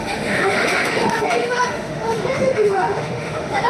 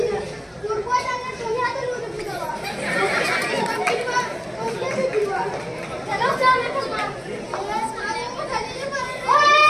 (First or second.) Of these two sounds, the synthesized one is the first